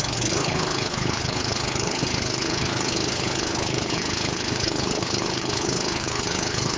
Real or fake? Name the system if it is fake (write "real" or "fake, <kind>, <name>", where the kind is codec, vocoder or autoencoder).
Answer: fake, codec, HILCodec